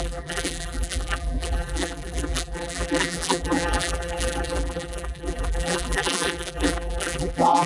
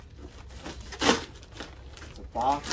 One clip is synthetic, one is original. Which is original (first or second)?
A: second